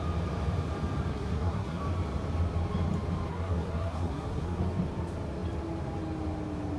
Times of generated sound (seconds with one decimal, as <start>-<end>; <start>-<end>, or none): 1.1-1.8; 3.3-4.6